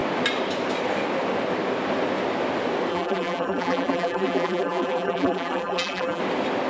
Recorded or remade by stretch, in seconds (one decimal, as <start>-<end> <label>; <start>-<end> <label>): 0.0-2.9 recorded; 2.9-6.2 remade; 6.2-6.7 recorded